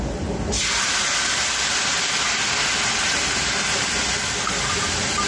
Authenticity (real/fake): real